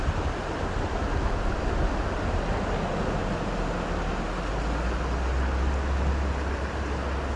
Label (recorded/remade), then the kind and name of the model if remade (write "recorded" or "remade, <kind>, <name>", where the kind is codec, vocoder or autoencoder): recorded